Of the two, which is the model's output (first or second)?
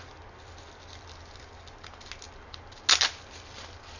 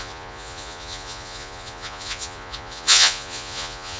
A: second